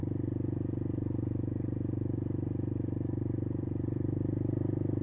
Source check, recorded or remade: remade